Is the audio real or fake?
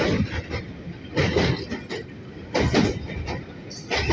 real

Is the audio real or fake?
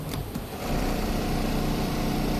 fake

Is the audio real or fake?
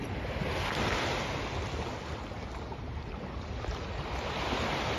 real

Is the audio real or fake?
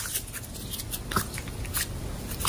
real